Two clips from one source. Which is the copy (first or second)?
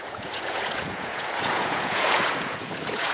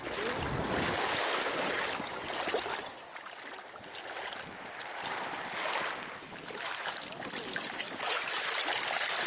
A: first